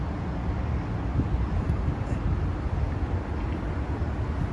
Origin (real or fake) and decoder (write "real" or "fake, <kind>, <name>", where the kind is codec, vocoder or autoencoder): real